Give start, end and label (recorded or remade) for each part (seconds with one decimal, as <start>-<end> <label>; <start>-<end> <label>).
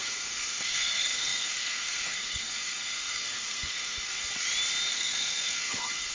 0.0-4.2 remade; 4.2-4.9 recorded; 4.9-6.1 remade